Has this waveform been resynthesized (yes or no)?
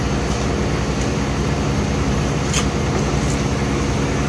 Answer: no